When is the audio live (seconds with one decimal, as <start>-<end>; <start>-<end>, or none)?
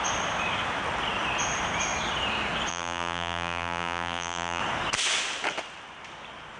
0.0-2.7; 4.6-6.6